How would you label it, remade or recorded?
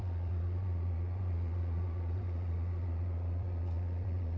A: remade